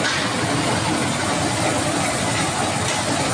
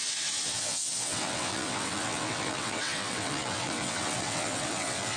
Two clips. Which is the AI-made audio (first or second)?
second